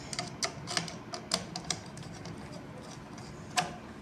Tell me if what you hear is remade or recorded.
recorded